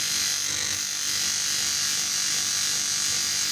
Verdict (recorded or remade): recorded